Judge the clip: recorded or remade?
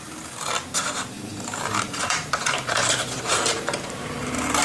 remade